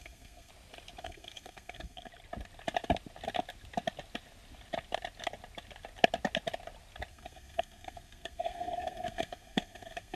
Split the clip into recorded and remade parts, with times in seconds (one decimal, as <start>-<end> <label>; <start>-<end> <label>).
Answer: 0.0-0.5 remade; 0.5-1.0 recorded; 1.0-2.1 remade; 2.1-7.1 recorded; 7.1-10.2 remade